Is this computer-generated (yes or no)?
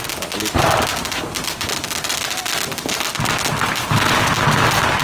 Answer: no